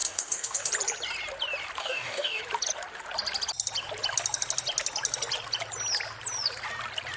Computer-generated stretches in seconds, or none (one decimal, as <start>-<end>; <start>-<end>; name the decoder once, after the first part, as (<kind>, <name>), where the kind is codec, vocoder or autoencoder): 0.0-0.7 (codec, DAC); 1.8-2.4